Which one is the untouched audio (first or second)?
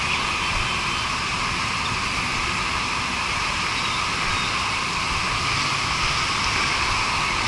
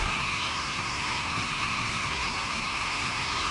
first